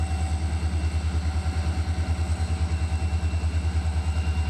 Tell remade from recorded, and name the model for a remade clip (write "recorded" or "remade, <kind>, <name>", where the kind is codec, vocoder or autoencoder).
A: recorded